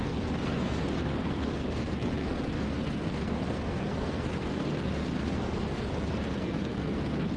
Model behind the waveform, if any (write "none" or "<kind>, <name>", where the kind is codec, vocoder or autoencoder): codec, SNAC